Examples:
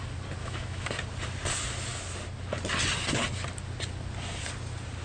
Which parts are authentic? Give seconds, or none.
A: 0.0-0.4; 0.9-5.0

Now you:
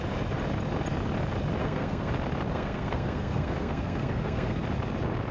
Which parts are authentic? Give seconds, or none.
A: 0.0-1.6; 2.1-2.5; 4.6-5.3